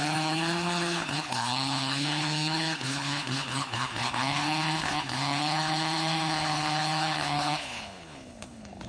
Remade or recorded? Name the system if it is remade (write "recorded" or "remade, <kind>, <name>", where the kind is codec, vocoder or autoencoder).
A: remade, codec, HILCodec